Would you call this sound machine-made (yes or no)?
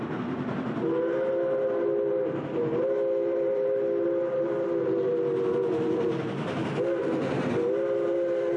no